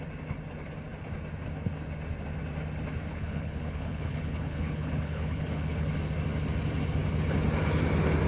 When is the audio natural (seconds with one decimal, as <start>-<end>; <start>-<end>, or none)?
0.0-3.1; 5.9-8.3